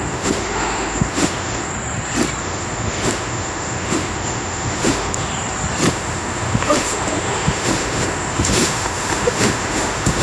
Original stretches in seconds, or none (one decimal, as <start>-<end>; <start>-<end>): 1.7-2.4; 5.3-5.9